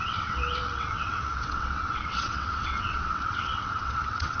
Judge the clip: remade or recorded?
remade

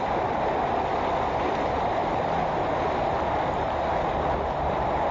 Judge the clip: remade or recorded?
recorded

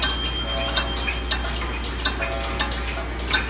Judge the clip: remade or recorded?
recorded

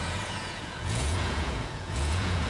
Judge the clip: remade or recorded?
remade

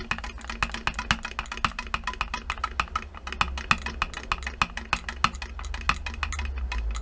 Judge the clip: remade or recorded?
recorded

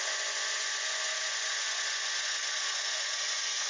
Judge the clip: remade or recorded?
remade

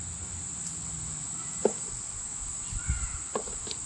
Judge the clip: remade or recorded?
recorded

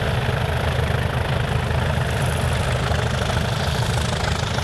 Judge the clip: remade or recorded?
recorded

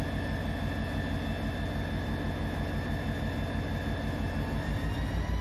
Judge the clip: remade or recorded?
recorded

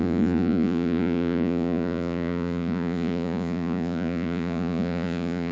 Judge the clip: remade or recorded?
remade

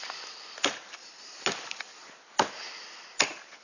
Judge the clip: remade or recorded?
recorded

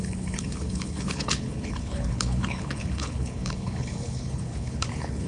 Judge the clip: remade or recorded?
remade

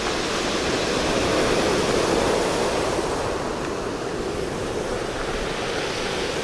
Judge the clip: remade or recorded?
recorded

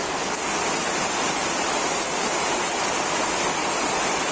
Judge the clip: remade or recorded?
recorded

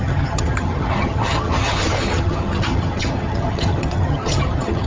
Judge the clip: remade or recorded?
remade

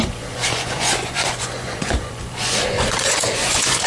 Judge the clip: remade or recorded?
remade